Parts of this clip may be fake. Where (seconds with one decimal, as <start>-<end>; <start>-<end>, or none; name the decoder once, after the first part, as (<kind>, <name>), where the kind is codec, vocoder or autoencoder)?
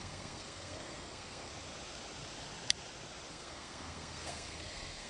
0.0-1.5 (codec, SNAC); 3.3-5.1